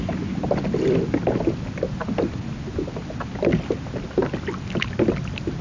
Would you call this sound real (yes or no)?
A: yes